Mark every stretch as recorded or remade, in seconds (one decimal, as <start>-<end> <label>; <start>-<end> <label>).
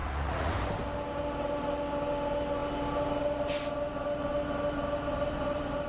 0.0-0.5 remade; 0.5-5.9 recorded